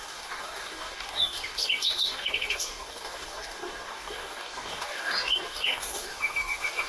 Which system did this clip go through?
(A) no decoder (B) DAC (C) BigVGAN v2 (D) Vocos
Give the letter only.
B